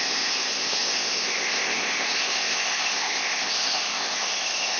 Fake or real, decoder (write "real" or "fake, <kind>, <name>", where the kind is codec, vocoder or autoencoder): fake, codec, ZipCodec